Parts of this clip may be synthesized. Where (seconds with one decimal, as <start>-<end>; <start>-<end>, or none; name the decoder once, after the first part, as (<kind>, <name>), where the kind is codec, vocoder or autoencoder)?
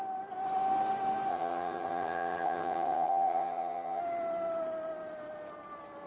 1.3-4.0 (vocoder, HiFi-GAN)